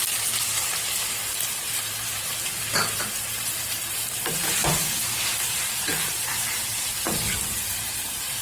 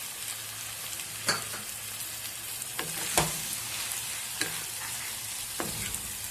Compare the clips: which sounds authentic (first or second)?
second